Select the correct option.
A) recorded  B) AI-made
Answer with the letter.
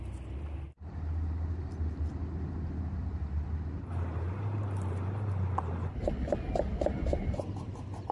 A